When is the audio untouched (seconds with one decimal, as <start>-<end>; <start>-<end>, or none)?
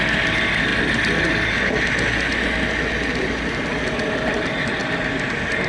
0.0-4.8; 5.3-5.7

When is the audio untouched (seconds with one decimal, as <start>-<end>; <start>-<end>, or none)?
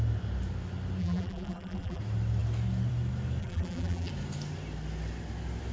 0.0-1.0; 2.0-3.4; 4.1-5.7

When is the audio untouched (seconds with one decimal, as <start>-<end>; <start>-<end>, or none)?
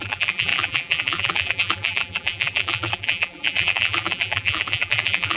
none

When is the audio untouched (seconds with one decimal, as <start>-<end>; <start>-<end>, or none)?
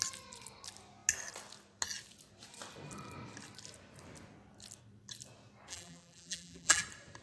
0.0-5.7; 6.8-7.2